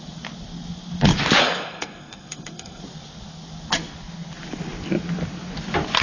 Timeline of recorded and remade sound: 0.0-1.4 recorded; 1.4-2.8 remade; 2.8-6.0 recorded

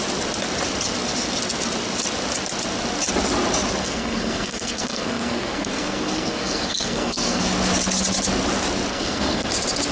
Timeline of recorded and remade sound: 0.0-3.8 recorded; 3.8-7.4 remade; 7.4-8.9 recorded; 8.9-9.5 remade; 9.5-9.9 recorded

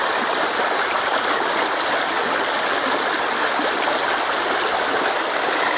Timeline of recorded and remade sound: 0.0-5.8 recorded

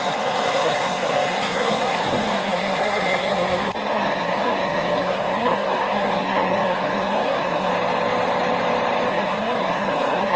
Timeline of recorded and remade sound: 0.0-7.7 remade; 7.7-9.1 recorded; 9.1-10.4 remade

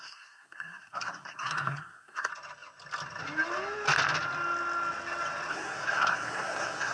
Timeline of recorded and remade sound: 0.0-2.3 remade; 2.3-5.5 recorded; 5.5-6.9 remade

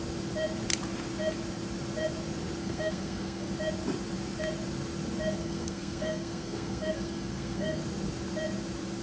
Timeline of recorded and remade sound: 0.0-2.6 recorded; 2.6-3.5 remade; 3.5-5.4 recorded; 5.4-7.8 remade; 7.8-9.0 recorded

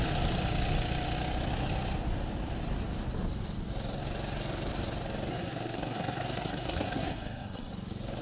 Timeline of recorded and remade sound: 0.0-5.3 recorded; 5.3-7.7 remade; 7.7-8.2 recorded

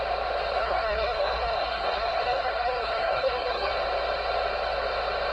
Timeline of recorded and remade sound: 0.0-0.6 recorded; 0.6-3.7 remade; 3.7-5.3 recorded